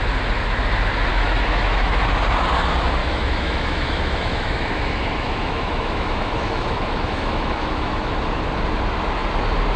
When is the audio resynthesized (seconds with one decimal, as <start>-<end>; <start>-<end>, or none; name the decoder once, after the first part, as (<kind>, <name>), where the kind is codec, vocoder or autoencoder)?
1.1-2.0 (autoencoder, DAC-VAE); 3.0-8.1